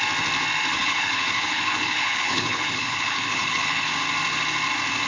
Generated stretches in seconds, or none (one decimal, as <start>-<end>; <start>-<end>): 0.8-3.9